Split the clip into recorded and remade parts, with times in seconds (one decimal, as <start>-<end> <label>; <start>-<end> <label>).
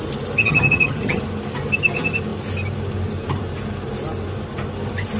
0.0-0.4 recorded; 0.4-1.2 remade; 1.2-5.2 recorded